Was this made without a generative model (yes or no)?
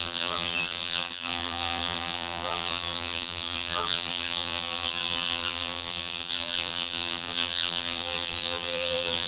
no